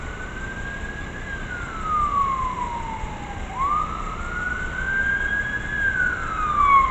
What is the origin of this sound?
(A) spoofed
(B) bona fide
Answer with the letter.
B